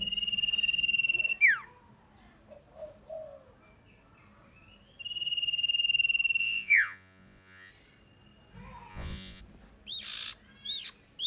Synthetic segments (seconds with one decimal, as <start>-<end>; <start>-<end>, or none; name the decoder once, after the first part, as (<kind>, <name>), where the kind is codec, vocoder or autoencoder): 6.4-7.7 (vocoder, Vocos); 8.9-9.4